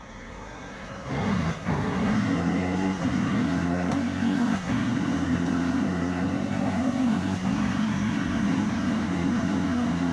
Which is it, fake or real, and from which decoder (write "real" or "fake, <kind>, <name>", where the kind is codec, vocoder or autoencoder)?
fake, codec, SNAC